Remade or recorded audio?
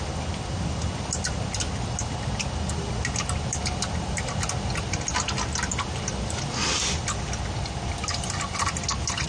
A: recorded